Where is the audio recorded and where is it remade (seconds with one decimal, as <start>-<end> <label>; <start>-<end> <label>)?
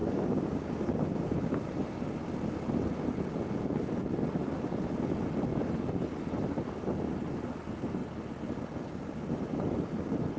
0.0-1.6 remade; 1.6-10.4 recorded